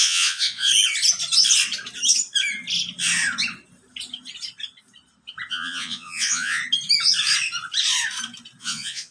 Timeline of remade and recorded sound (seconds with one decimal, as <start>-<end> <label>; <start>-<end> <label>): 0.0-0.7 remade; 0.7-5.5 recorded; 5.5-6.6 remade; 6.6-8.6 recorded; 8.6-9.1 remade